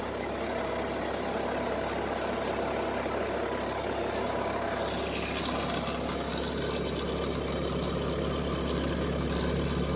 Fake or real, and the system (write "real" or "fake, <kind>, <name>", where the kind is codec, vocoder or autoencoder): real